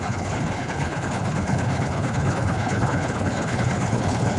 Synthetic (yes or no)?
yes